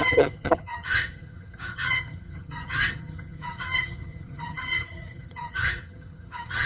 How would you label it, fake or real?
fake